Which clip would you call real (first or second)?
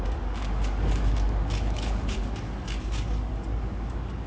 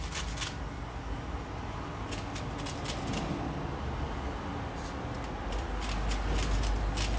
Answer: second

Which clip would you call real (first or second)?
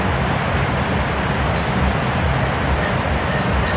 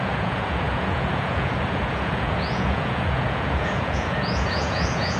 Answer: first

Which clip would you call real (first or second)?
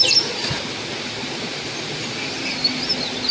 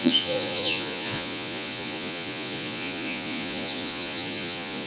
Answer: first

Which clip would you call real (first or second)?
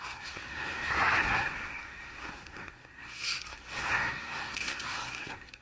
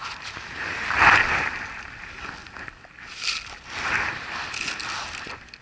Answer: second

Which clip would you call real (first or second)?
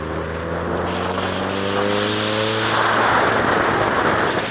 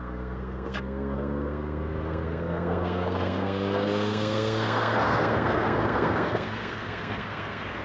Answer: first